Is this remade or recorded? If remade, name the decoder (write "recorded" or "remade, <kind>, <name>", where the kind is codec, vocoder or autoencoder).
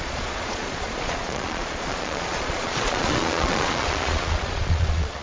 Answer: remade, vocoder, Vocos